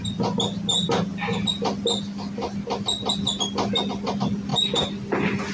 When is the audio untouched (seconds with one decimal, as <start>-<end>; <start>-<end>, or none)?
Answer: 0.0-5.5

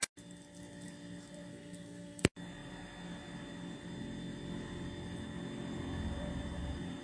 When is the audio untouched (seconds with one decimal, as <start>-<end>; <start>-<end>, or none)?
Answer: 0.0-1.5; 2.2-7.0

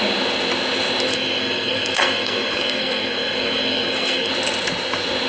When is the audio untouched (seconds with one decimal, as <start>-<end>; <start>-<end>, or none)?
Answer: 0.0-1.1; 4.3-5.3

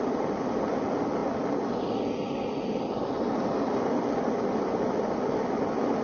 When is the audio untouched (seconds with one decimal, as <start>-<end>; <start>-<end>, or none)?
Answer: 0.0-6.0

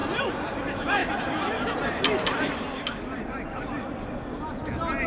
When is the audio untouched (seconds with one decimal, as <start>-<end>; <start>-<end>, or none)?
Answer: 0.0-1.0; 4.1-5.1